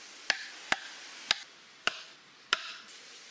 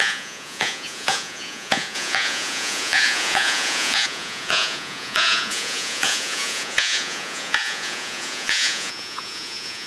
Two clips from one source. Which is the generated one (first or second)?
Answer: second